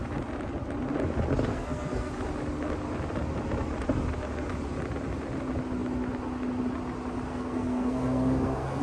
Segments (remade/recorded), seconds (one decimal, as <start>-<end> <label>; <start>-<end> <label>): 0.0-1.5 recorded; 1.5-2.1 remade; 2.1-7.3 recorded; 7.3-8.8 remade